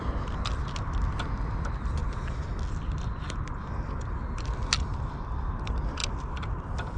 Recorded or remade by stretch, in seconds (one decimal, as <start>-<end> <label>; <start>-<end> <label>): 0.0-2.0 remade; 2.0-5.1 recorded; 5.1-6.0 remade; 6.0-7.0 recorded